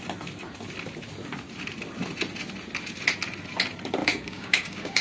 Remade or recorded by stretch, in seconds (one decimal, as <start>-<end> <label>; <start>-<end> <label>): 0.0-4.0 recorded; 4.0-5.0 remade